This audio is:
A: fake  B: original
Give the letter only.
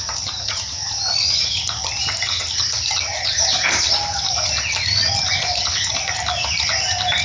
B